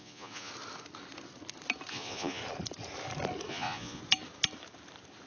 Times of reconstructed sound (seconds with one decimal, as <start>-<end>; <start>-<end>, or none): 0.0-0.5; 1.9-2.4; 3.5-4.0